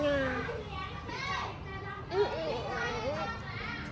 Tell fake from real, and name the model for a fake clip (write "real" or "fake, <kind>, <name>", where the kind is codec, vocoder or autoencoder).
real